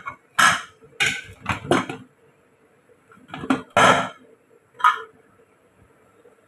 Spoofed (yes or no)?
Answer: no